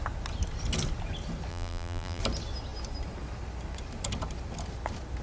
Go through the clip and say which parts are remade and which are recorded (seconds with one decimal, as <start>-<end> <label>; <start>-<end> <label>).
0.0-1.5 recorded; 1.5-2.2 remade; 2.2-5.2 recorded